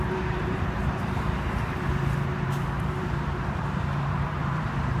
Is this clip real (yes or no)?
no